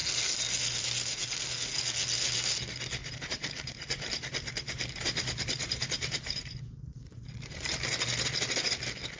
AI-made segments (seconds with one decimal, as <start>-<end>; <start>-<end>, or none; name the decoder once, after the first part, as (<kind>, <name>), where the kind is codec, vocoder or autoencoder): 3.0-7.8 (vocoder, BigVGAN v2)